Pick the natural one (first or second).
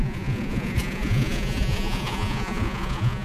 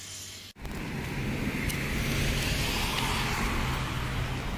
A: second